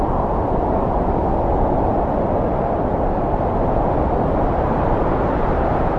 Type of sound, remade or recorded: recorded